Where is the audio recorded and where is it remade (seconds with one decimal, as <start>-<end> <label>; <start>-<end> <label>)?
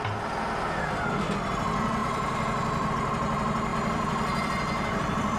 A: 0.0-2.0 recorded; 2.0-2.9 remade; 2.9-3.7 recorded; 3.7-5.4 remade